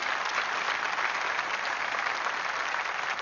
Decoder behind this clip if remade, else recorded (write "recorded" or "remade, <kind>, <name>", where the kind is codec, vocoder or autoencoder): recorded